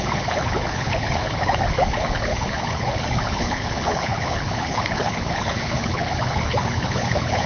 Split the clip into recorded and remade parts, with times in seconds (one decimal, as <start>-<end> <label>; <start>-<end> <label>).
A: 0.0-7.5 remade